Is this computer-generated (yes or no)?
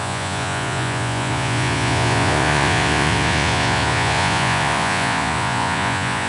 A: yes